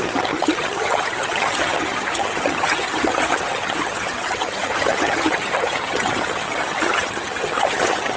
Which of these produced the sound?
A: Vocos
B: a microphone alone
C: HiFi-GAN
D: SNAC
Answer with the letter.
C